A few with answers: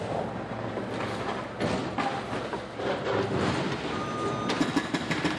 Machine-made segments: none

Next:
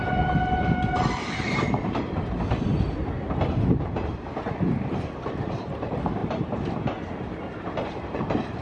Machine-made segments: 0.0-3.0 (vocoder, BigVGAN v2); 3.6-6.2; 7.9-8.6

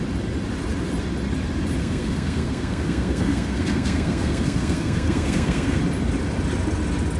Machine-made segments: 1.8-5.8 (codec, SNAC)

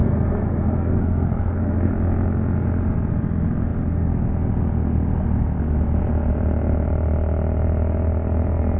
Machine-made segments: 0.0-1.9 (codec, SNAC)

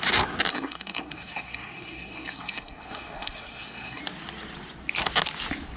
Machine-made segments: 0.5-4.0 (codec, SNAC)

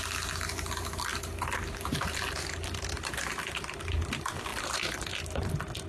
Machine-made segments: 1.1-4.0 (vocoder, BigVGAN v2); 4.5-5.5

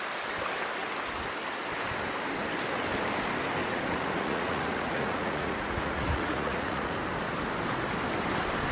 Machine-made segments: 3.6-6.9 (vocoder, Vocos)

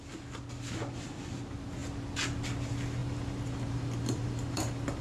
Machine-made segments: 3.0-5.0 (vocoder, BigVGAN v2)